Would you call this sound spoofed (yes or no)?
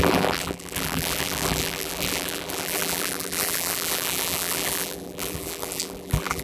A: yes